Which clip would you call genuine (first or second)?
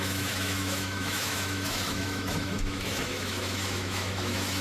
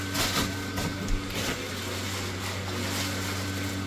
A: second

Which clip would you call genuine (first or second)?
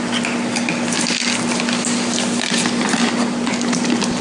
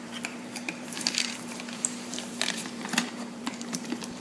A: first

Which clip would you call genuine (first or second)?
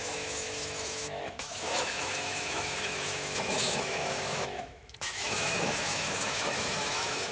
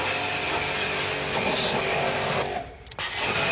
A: second